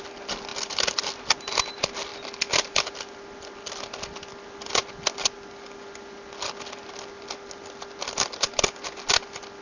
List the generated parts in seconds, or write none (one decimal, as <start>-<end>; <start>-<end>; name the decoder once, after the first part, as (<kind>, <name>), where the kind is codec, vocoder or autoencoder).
none